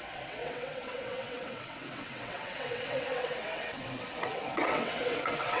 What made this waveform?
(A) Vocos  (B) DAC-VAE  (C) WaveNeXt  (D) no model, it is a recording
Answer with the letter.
C